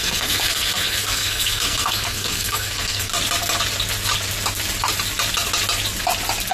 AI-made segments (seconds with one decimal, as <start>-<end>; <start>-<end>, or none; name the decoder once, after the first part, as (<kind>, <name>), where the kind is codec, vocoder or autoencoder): 0.0-3.1 (codec, SNAC)